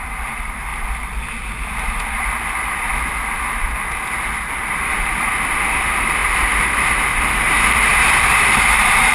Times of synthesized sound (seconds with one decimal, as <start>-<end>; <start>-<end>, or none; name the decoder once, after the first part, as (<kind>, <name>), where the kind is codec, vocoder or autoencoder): 0.0-0.7 (vocoder, BigVGAN v2); 4.6-9.1